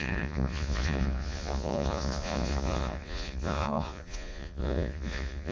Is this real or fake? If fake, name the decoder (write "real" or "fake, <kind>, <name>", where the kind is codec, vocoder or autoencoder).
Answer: fake, vocoder, Vocos